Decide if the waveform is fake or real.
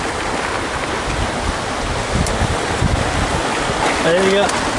real